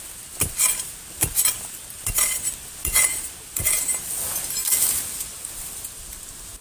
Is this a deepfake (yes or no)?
no